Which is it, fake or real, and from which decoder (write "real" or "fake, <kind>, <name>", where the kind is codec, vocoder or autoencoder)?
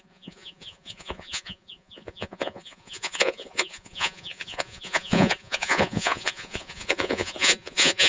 fake, vocoder, Vocos